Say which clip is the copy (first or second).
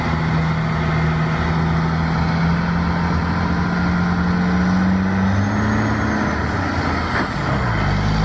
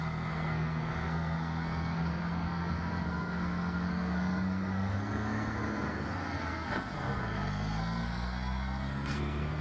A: second